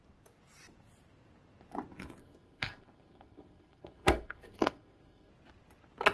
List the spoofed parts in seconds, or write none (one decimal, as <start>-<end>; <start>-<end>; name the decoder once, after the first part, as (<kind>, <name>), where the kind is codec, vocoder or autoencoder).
2.2-5.3 (codec, SNAC)